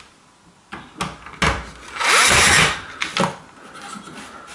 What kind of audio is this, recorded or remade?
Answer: recorded